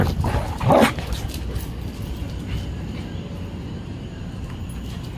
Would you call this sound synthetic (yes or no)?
no